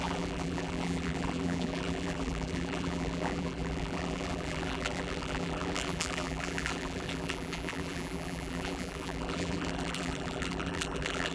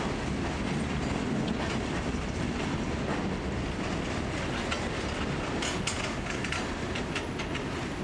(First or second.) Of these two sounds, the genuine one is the second